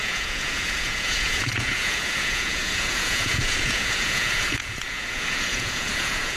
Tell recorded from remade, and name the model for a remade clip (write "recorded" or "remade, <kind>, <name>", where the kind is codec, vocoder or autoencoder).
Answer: remade, vocoder, Vocos